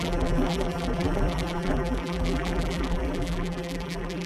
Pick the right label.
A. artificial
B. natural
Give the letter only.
A